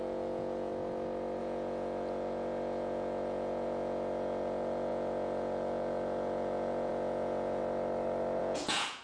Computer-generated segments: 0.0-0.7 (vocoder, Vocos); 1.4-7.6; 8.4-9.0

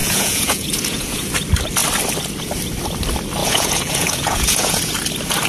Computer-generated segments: 0.0-1.3 (vocoder, Vocos); 3.4-4.9

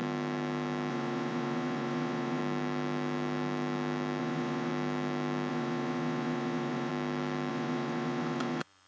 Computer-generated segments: 0.9-2.4 (vocoder, Vocos); 4.2-4.7; 5.5-6.9; 7.5-8.9

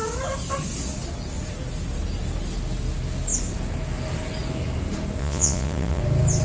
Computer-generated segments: 5.2-6.0 (vocoder, Vocos)